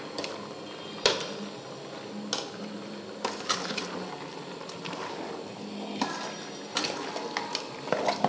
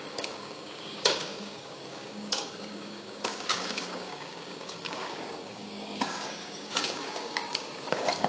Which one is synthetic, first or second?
second